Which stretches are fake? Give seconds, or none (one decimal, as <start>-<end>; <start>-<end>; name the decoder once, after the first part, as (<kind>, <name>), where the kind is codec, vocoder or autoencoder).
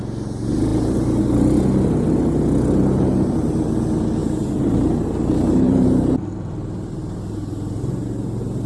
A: 4.2-7.8 (vocoder, BigVGAN v2)